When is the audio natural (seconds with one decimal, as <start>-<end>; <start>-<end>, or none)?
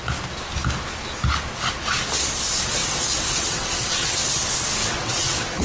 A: 0.0-2.8; 4.2-4.8